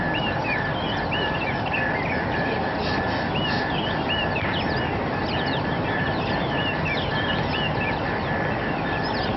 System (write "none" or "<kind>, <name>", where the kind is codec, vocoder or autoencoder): none